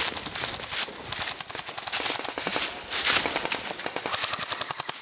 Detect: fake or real real